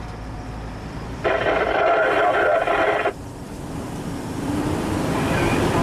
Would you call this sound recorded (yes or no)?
no